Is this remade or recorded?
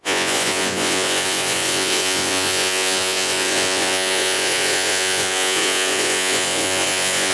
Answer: remade